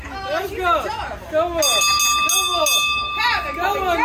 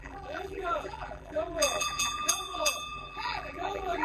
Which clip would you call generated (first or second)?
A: second